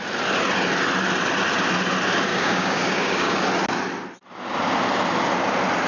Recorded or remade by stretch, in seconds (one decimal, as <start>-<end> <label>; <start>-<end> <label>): 0.0-2.3 recorded; 2.3-3.4 remade; 3.4-5.9 recorded